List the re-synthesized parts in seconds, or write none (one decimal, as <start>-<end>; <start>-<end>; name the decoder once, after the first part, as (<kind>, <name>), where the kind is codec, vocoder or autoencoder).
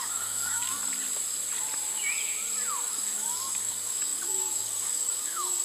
0.0-0.8 (codec, DAC); 2.9-5.6